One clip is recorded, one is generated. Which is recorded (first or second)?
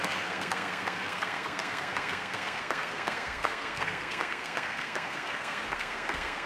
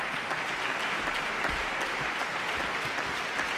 second